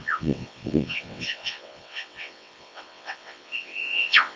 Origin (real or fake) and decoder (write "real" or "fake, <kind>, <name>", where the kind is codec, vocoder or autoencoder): fake, vocoder, WaveNeXt